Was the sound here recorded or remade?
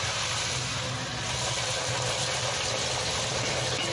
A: recorded